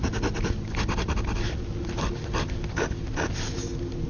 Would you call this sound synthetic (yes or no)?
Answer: no